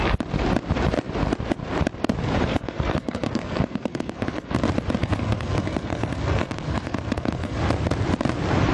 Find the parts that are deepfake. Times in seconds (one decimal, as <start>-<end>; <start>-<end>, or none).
2.5-4.5; 5.0-7.6